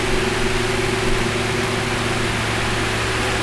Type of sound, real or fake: real